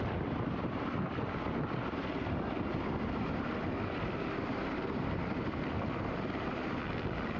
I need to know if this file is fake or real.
real